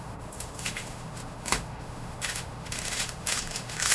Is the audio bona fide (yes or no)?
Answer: no